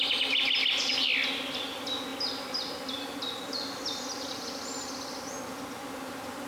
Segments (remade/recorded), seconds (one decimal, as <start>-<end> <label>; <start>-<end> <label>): 0.0-6.5 recorded